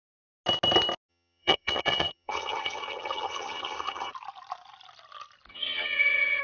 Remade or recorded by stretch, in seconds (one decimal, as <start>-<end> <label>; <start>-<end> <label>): 0.0-1.1 recorded; 1.1-4.1 remade; 4.1-5.5 recorded; 5.5-6.4 remade